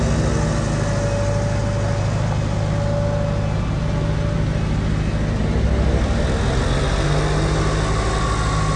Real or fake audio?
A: real